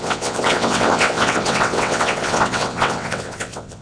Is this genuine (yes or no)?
no